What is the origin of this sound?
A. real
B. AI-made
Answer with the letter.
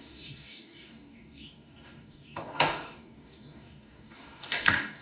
B